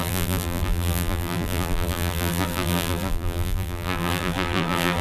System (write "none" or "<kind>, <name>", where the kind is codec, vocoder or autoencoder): vocoder, BigVGAN v2